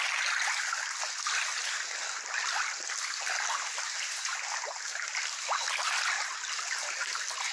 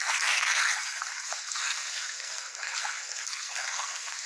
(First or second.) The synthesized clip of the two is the second